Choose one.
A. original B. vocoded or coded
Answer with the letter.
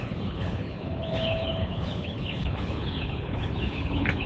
B